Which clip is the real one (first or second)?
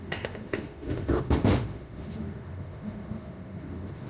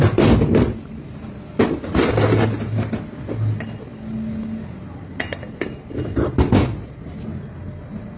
second